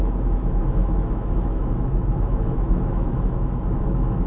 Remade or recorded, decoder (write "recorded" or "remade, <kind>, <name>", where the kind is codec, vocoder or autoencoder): remade, autoencoder, DAC-VAE